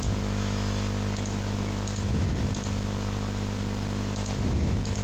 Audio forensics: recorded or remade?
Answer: remade